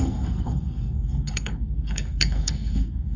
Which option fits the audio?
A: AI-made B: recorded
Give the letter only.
A